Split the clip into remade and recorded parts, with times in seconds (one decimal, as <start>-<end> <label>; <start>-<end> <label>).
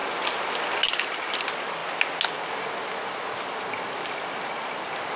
0.0-5.2 recorded